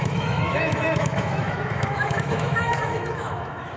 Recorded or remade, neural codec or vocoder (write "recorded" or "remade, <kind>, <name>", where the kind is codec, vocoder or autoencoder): remade, autoencoder, DAC-VAE